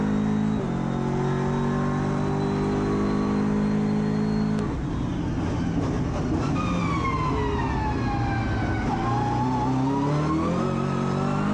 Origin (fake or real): real